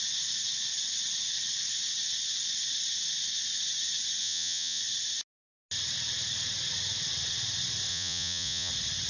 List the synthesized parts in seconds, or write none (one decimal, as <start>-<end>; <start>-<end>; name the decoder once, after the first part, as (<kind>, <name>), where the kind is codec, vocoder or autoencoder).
4.2-4.8 (vocoder, Vocos); 7.9-8.7